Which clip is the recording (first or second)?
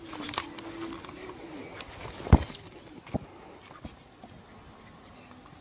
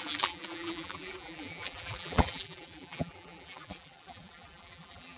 first